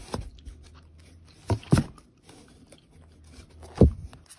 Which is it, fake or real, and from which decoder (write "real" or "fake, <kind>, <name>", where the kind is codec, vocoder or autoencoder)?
real